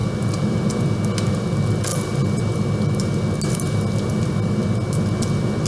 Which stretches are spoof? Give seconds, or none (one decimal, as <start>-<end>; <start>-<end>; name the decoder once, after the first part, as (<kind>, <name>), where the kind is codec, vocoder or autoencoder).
none